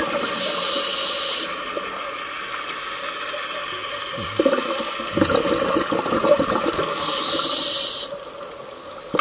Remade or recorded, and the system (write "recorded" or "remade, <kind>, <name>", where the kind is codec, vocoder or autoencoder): recorded